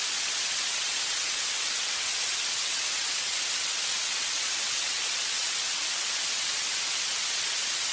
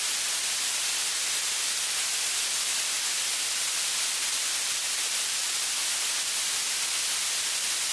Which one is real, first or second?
second